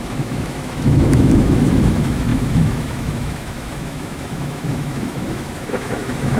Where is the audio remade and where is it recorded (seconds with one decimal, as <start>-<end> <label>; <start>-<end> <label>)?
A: 0.0-6.4 remade